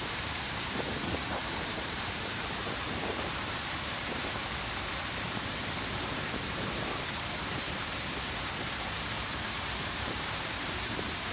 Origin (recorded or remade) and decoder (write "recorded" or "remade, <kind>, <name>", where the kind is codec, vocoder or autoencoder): remade, vocoder, BigVGAN v2